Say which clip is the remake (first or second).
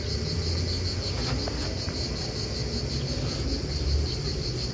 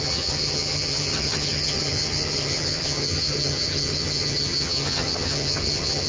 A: second